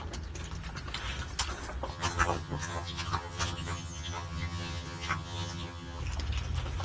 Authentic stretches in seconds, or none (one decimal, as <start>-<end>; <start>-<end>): 0.0-1.9; 6.0-6.8

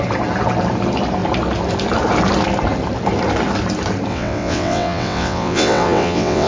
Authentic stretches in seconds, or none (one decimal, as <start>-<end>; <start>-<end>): 0.0-4.1